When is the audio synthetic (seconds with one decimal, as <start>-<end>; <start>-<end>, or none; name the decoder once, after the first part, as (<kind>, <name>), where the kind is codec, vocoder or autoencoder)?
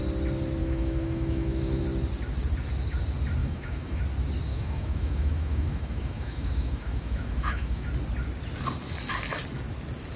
0.6-1.8 (autoencoder, DAC-VAE); 3.4-4.0; 4.5-7.9